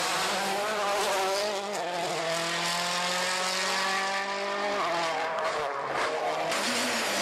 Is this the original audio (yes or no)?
yes